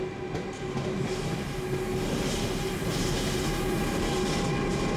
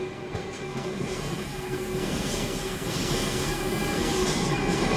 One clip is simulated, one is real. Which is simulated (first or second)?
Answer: second